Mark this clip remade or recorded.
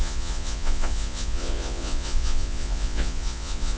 remade